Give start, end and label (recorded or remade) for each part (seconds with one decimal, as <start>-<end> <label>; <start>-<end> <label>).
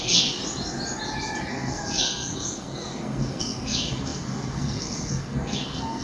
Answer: 0.0-0.4 remade; 0.4-1.5 recorded; 1.5-6.0 remade